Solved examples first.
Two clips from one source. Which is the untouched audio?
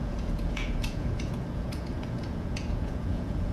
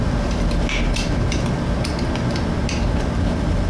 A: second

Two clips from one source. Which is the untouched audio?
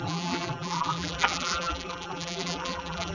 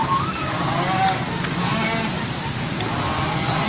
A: second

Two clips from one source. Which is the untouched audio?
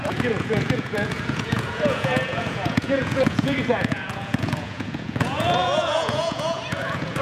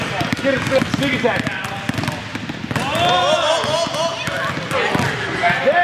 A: second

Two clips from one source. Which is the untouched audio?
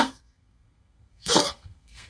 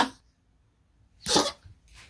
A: second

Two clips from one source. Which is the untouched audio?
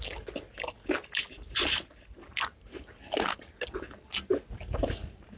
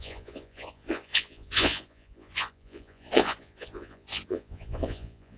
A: first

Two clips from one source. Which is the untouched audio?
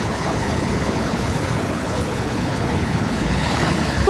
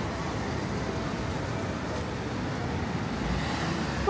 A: second